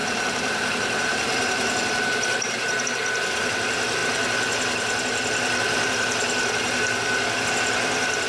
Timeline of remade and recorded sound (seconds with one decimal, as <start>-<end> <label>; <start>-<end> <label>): 0.0-2.8 remade; 2.8-8.3 recorded